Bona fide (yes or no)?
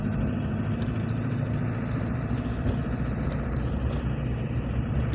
no